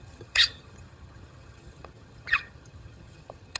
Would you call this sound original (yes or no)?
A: no